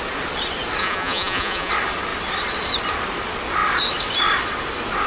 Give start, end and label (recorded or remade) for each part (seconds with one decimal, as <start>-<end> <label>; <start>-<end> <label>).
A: 0.0-0.8 recorded; 0.8-1.7 remade; 1.7-5.1 recorded